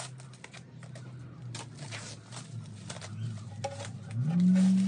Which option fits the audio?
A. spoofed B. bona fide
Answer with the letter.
B